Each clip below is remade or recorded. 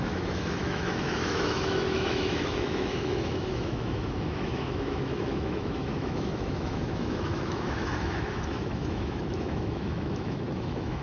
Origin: remade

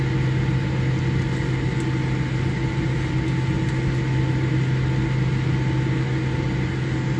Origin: recorded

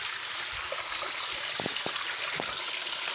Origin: recorded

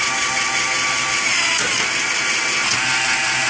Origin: recorded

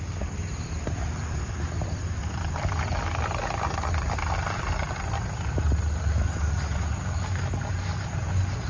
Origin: recorded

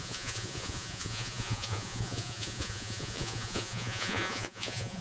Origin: remade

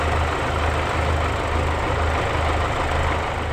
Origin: recorded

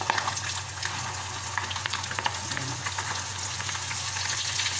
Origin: remade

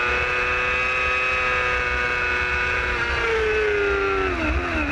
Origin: recorded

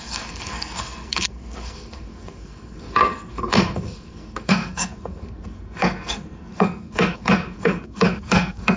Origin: remade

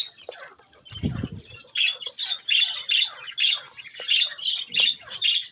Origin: recorded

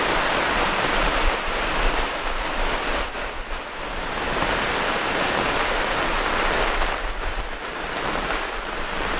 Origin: recorded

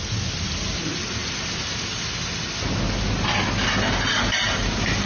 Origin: recorded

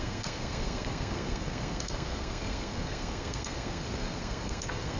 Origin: remade